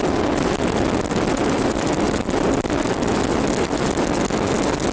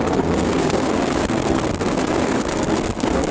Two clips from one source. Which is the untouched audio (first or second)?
first